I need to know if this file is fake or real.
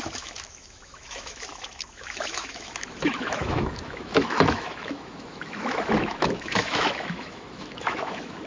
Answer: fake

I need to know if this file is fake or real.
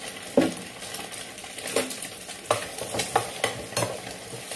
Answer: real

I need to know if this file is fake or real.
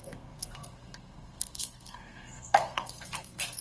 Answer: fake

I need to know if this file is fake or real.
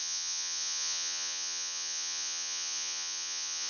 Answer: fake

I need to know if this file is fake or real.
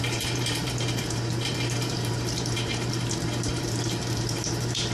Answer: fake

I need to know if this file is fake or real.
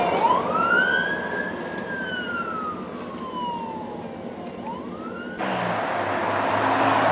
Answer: real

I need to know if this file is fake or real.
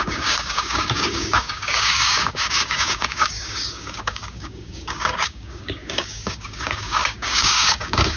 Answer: fake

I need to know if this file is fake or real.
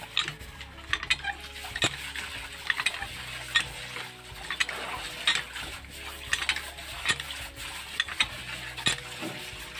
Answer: real